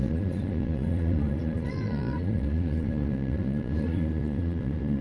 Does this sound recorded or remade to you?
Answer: remade